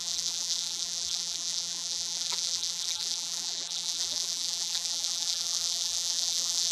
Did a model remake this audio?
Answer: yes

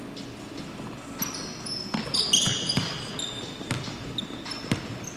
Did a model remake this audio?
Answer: no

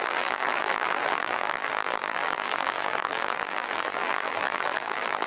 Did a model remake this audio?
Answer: yes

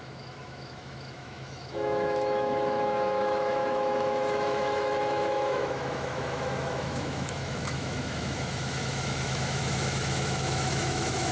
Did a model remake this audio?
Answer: yes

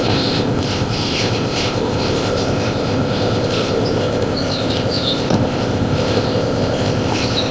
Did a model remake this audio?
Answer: yes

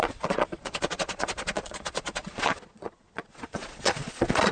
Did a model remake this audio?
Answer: yes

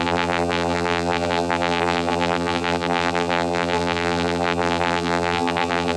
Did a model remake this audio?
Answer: yes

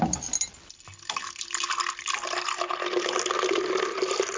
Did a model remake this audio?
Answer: no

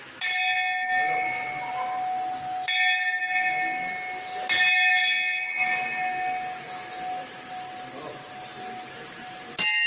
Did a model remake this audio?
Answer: no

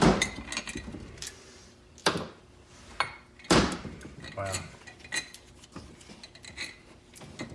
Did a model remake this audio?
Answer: no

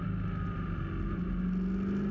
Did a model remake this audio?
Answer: no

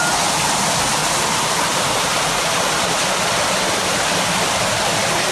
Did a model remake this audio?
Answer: no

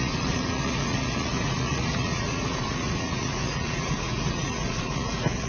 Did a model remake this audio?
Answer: yes